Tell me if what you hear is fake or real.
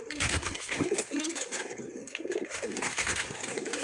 fake